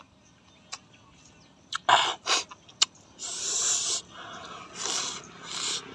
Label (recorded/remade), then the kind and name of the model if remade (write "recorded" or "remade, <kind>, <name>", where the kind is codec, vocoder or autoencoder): recorded